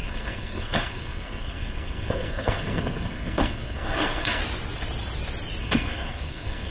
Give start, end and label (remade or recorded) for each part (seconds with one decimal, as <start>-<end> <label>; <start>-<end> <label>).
0.0-4.4 remade; 4.4-5.6 recorded; 5.6-6.7 remade